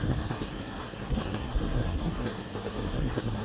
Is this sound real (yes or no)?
no